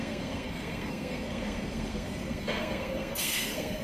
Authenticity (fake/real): fake